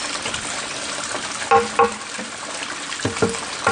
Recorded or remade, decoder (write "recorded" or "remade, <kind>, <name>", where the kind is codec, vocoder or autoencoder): recorded